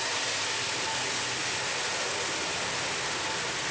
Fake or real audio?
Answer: real